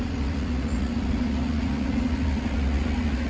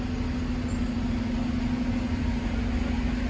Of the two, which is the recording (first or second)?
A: second